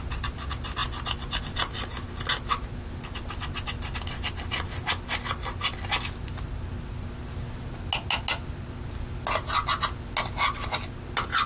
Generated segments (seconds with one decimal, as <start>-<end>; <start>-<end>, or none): none

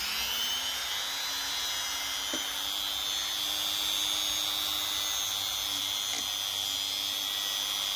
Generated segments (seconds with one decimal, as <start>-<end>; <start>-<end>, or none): none

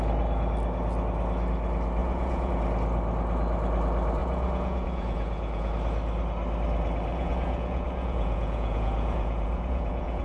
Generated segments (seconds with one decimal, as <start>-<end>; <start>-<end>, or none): 2.0-2.5; 4.2-5.7; 7.1-10.2

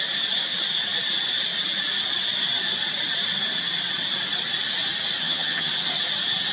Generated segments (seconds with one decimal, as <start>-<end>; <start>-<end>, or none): 5.2-5.7

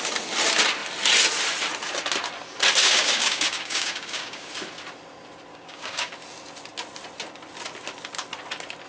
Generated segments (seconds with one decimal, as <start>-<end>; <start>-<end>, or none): 2.8-4.5; 5.5-6.1

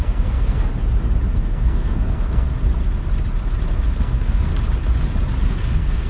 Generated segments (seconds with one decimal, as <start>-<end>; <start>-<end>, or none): 0.0-0.7; 1.3-2.5; 4.0-4.5; 5.5-6.1